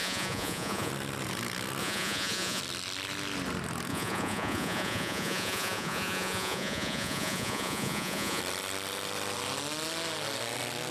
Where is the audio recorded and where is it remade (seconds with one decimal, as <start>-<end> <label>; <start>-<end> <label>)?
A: 0.0-0.9 remade; 0.9-1.8 recorded; 1.8-2.6 remade; 2.6-3.9 recorded; 3.9-8.4 remade; 8.4-10.9 recorded

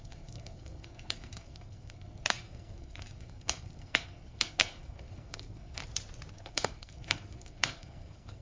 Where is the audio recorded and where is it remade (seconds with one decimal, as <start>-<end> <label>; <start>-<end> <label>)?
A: 0.0-5.8 remade; 5.8-6.3 recorded; 6.3-8.4 remade

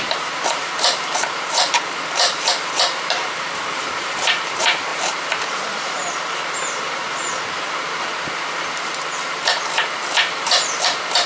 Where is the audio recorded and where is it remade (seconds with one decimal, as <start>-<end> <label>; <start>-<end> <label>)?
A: 0.0-11.3 remade